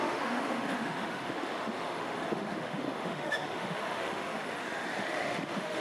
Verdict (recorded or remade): remade